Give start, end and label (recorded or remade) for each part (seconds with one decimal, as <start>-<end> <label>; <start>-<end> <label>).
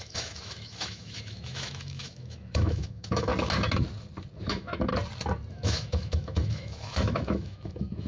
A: 0.0-3.3 remade; 3.3-4.4 recorded; 4.4-4.9 remade; 4.9-5.5 recorded; 5.5-8.1 remade